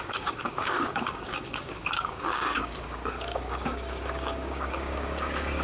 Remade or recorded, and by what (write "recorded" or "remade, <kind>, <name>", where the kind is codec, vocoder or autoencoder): remade, codec, DAC